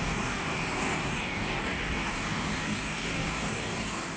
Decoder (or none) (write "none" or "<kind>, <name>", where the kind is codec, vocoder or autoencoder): codec, DAC